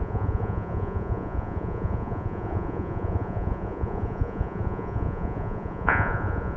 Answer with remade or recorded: remade